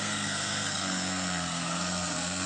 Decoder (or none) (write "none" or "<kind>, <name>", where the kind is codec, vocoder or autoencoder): codec, SNAC